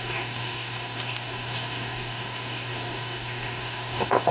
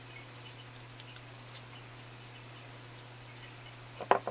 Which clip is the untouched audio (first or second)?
second